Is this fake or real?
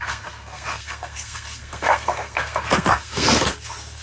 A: fake